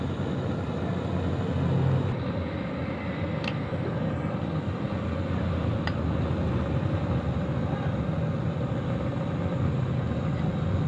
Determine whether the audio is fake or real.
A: real